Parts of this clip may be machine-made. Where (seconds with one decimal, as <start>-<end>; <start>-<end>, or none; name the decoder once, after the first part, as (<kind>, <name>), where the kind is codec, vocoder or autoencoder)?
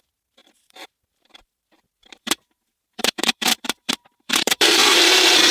0.0-5.5 (vocoder, BigVGAN v2)